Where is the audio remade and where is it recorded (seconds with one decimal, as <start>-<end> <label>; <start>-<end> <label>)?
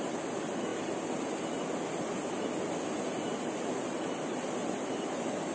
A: 0.0-4.6 recorded; 4.6-5.5 remade